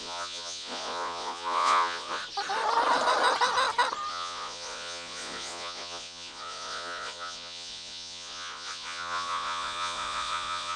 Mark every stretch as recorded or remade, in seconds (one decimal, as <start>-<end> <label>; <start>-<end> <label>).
0.0-2.2 remade; 2.2-4.1 recorded; 4.1-10.8 remade